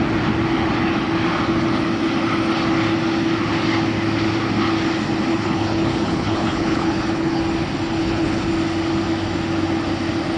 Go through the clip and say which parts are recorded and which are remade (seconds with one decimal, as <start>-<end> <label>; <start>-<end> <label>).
0.0-5.3 recorded; 5.3-7.4 remade; 7.4-8.0 recorded; 8.0-8.5 remade; 8.5-10.4 recorded